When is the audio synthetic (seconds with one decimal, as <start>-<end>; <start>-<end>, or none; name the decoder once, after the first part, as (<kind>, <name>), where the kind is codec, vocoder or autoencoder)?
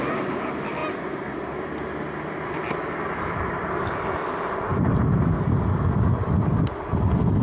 none